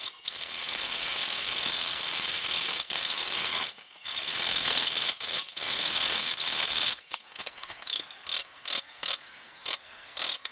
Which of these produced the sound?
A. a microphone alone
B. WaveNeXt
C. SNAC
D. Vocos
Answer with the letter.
C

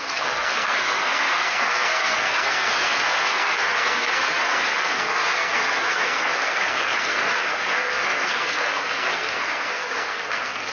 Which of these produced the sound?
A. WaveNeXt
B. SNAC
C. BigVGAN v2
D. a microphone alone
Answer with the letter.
B